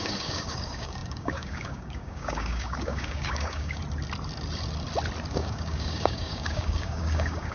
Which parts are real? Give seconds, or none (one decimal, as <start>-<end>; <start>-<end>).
3.8-5.3